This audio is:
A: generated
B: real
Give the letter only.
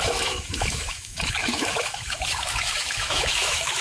A